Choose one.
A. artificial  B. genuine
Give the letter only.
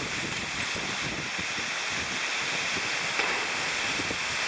B